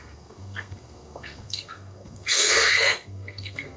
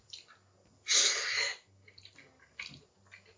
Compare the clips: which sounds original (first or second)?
second